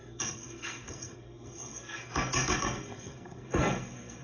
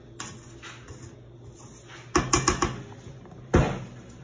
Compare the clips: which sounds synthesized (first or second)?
first